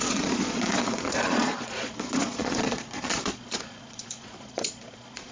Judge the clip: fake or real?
fake